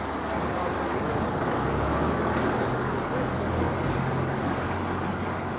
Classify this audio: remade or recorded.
remade